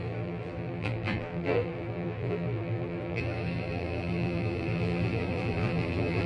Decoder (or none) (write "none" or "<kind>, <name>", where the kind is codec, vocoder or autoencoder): vocoder, BigVGAN v2